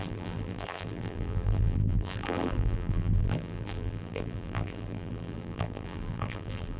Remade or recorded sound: remade